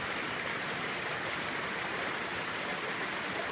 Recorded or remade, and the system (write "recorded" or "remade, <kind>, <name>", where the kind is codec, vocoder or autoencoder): remade, vocoder, BigVGAN v2